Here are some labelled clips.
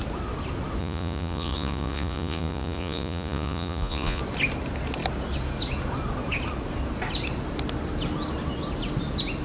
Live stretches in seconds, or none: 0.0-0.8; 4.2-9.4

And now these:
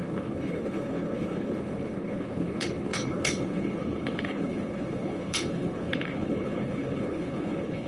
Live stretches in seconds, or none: none

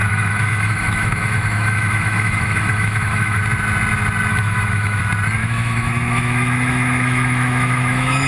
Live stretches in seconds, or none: 3.4-4.3; 5.0-5.4

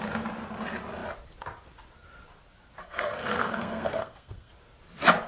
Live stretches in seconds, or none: 0.0-2.8; 4.5-5.3

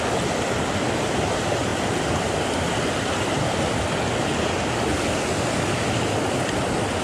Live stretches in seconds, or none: 0.0-7.0